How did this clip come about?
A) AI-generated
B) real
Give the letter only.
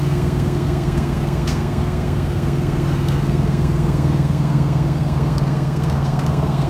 A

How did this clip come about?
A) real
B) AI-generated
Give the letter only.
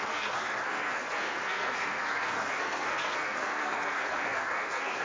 B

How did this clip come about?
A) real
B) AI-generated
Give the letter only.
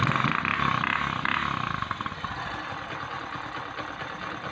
A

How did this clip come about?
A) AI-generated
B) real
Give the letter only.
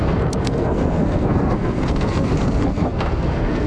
A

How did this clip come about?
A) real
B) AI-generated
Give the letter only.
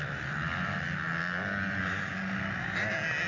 A